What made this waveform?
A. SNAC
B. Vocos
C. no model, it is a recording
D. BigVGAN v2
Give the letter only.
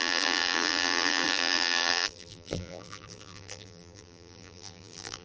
D